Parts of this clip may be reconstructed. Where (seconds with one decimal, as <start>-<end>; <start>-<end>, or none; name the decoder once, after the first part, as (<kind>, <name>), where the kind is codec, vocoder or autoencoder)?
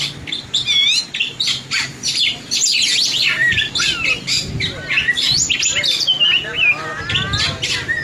0.8-4.5 (vocoder, BigVGAN v2)